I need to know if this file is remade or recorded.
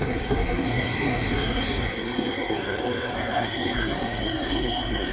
remade